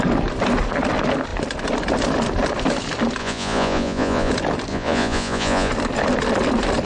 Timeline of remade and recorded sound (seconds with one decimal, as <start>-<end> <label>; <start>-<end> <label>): 0.0-3.2 recorded; 3.2-4.3 remade; 4.3-4.7 recorded; 4.7-5.7 remade; 5.7-6.9 recorded